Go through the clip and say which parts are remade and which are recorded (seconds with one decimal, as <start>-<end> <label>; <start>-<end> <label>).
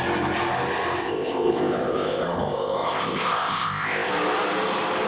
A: 0.0-1.0 recorded; 1.0-4.1 remade; 4.1-5.1 recorded